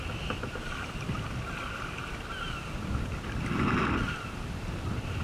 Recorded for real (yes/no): yes